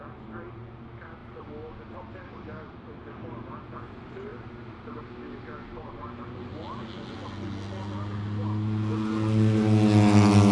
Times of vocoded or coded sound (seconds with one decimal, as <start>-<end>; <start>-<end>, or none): none